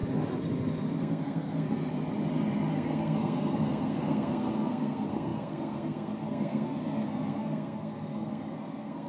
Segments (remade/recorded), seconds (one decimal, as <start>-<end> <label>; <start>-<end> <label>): 0.0-1.0 recorded; 1.0-1.9 remade; 1.9-2.7 recorded; 2.7-9.1 remade